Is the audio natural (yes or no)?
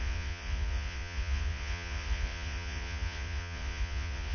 no